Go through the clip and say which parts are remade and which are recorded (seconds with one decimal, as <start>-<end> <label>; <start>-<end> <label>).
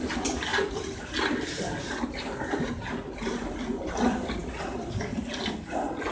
0.0-6.1 recorded